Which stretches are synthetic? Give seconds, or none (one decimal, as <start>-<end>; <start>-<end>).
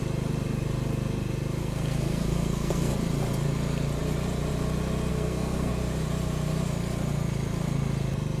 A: 1.6-2.9; 5.1-5.7